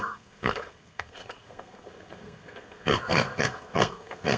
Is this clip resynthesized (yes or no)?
yes